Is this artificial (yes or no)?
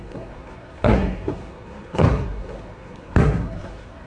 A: yes